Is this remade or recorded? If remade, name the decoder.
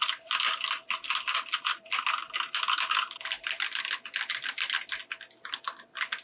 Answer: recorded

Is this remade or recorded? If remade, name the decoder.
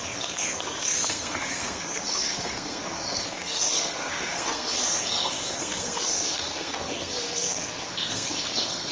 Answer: remade, codec, SNAC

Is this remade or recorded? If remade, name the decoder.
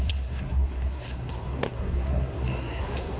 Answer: remade, codec, SNAC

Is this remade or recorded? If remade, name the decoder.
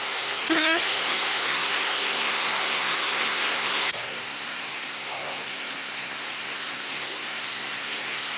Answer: remade, codec, SNAC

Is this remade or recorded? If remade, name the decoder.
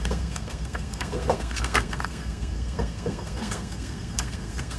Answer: remade, codec, SNAC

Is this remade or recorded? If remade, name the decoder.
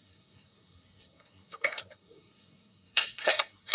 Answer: remade, codec, SNAC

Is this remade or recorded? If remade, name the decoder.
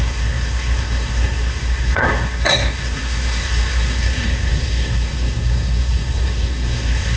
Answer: remade, codec, SNAC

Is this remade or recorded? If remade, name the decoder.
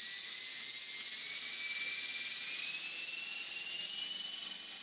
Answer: recorded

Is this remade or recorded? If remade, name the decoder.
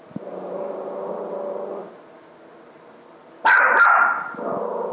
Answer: recorded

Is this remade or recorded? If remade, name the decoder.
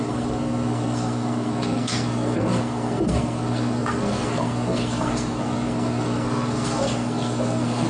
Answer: remade, codec, SNAC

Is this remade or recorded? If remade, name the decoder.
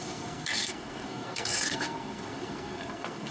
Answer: remade, codec, SNAC